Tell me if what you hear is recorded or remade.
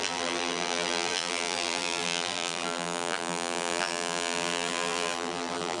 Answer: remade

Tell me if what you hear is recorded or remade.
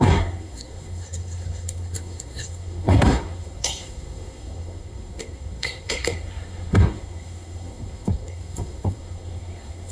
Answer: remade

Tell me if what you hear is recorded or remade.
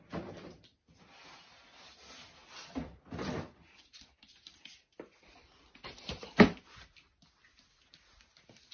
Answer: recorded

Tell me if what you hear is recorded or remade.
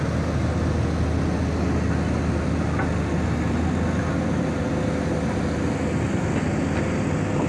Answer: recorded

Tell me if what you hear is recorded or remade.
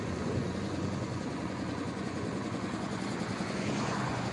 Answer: remade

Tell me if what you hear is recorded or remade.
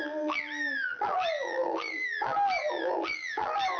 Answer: remade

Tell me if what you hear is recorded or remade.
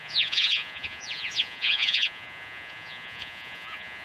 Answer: remade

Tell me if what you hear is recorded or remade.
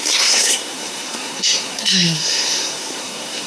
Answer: remade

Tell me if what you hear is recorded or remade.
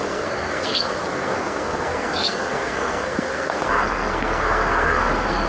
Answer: remade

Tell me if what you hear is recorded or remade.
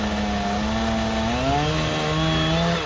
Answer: recorded